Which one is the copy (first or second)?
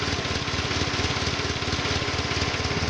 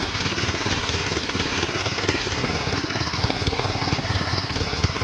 second